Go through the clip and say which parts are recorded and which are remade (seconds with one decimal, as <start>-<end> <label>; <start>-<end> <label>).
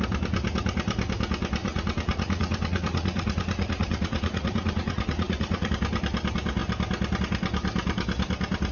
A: 0.0-1.6 recorded; 1.6-5.7 remade; 5.7-8.7 recorded